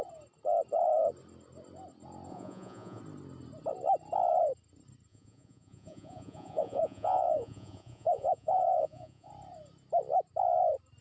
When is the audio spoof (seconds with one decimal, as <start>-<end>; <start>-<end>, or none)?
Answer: 2.3-3.0; 5.1-9.3